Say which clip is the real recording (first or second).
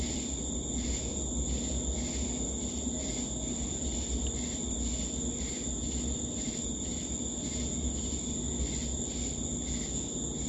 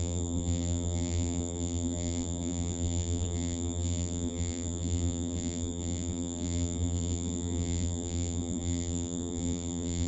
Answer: first